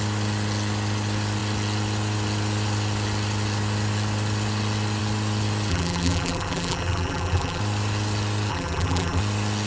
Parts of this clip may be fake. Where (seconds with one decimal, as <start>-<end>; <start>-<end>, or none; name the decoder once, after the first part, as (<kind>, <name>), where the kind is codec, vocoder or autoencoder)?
5.7-7.6 (vocoder, BigVGAN v2); 8.5-9.2